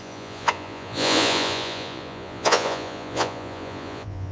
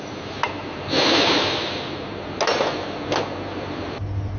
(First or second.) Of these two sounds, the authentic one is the second